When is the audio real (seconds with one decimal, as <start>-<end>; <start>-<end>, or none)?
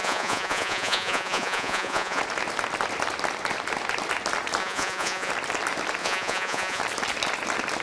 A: 2.2-4.6; 5.3-6.0; 6.8-7.8